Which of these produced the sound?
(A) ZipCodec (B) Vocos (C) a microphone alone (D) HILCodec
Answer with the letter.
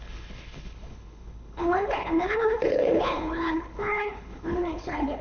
D